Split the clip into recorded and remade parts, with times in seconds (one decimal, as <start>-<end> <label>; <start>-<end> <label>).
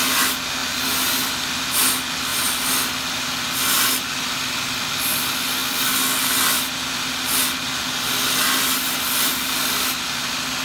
0.0-10.6 recorded